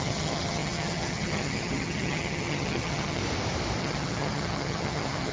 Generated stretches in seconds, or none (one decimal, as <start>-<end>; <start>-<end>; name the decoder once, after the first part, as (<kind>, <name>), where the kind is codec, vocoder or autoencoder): 0.0-3.2 (vocoder, HiFi-GAN); 3.8-5.3